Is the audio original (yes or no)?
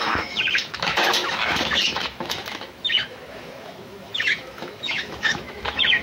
no